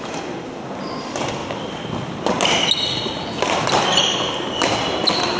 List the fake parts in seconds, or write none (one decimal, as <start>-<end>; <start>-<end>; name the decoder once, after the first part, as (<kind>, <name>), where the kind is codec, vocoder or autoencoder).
none